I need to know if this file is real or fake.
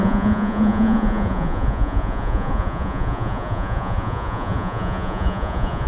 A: fake